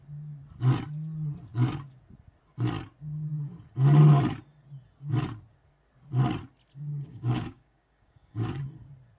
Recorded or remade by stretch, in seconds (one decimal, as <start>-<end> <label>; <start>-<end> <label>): 0.0-6.9 recorded; 6.9-8.6 remade; 8.6-9.2 recorded